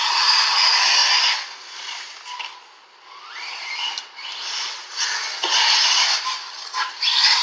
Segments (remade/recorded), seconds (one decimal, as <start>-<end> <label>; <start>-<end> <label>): 0.0-7.4 recorded